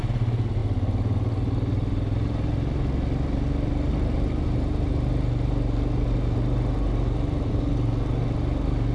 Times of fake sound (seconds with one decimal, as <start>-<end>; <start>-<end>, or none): none